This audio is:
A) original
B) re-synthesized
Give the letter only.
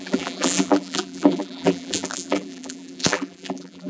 B